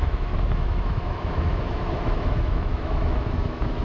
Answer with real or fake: fake